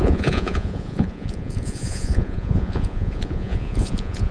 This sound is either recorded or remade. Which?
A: remade